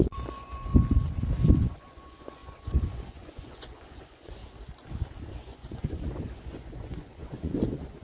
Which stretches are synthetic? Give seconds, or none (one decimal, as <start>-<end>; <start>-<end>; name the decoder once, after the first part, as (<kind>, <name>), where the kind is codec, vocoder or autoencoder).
0.0-0.7 (vocoder, Vocos); 1.6-4.4; 5.3-8.0